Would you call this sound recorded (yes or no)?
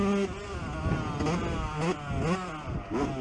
yes